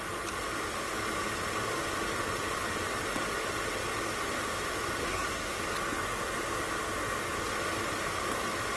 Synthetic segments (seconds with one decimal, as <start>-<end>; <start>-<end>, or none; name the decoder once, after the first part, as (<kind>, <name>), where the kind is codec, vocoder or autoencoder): 5.0-5.6 (codec, SNAC)